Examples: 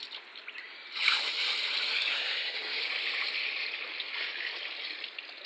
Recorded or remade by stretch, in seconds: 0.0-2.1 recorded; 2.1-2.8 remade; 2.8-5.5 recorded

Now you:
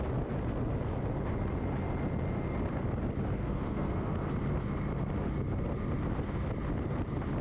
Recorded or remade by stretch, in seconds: 0.0-3.3 recorded; 3.3-4.1 remade; 4.1-7.4 recorded

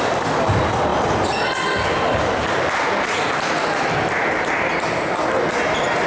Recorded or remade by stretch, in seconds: 0.0-6.1 recorded

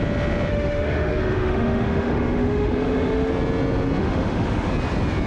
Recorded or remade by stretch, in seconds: 0.0-0.5 recorded; 0.5-3.3 remade; 3.3-4.0 recorded; 4.0-4.7 remade; 4.7-5.3 recorded